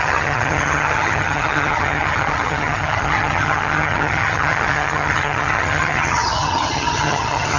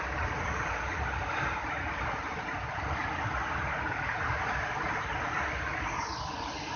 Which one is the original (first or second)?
second